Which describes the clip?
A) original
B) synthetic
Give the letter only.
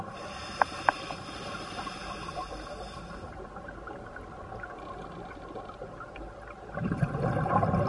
A